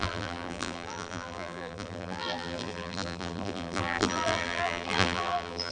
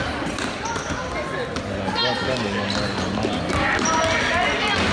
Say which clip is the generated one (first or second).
first